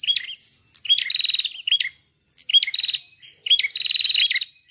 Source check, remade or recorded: recorded